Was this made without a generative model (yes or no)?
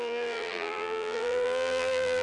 no